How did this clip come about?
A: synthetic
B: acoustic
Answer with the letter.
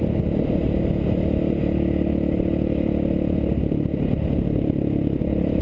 B